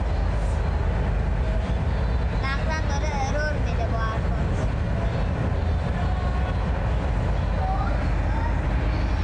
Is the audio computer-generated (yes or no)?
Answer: no